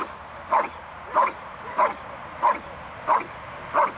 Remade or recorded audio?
recorded